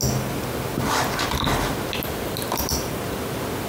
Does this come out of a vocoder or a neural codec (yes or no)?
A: no